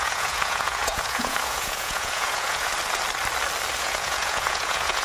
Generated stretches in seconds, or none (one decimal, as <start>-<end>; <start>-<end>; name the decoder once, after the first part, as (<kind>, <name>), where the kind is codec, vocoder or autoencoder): 0.0-2.7 (vocoder, Vocos); 3.8-5.0